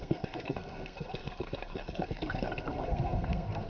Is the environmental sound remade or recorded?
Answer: remade